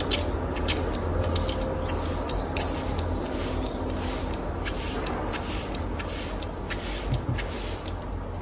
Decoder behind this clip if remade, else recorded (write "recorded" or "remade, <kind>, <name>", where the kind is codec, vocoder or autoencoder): recorded